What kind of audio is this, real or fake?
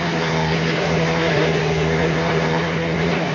fake